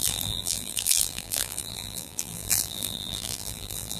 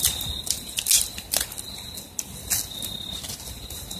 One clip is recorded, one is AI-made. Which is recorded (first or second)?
second